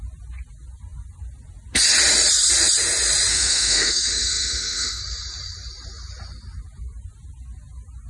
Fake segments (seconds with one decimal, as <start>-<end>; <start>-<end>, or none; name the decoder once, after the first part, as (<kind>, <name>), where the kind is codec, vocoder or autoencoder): 3.3-5.0 (autoencoder, DAC-VAE)